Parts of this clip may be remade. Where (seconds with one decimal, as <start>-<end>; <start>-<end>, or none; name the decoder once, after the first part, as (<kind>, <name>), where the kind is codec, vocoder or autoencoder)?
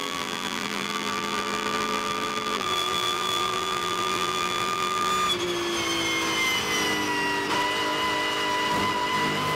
0.0-5.1 (vocoder, BigVGAN v2)